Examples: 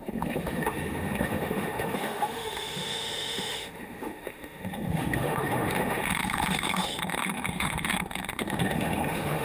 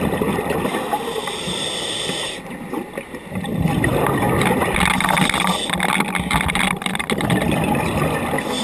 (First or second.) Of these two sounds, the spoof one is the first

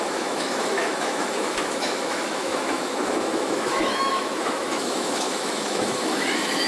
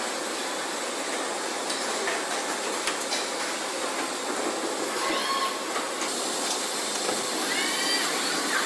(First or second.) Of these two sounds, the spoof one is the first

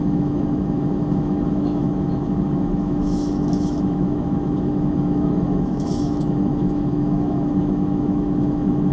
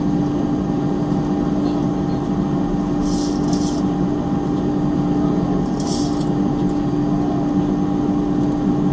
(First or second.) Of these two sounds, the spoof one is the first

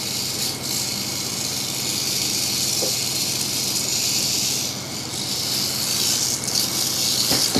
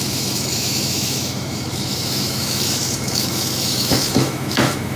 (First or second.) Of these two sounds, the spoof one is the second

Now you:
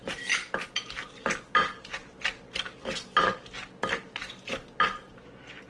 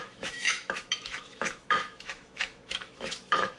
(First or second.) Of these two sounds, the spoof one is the second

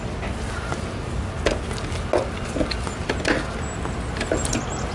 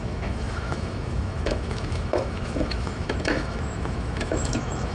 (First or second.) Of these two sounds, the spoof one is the second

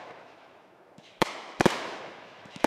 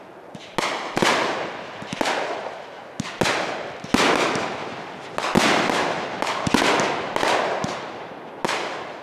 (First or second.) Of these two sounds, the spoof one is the first